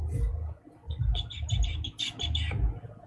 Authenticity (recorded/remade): recorded